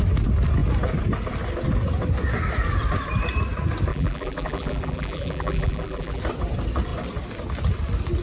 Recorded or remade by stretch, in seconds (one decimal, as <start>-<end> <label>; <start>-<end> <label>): 0.0-3.9 recorded; 3.9-6.2 remade; 6.2-8.2 recorded